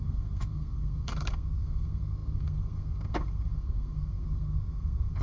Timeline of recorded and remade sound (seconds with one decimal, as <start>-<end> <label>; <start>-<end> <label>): 0.0-5.2 remade